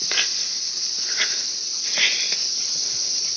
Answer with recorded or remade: recorded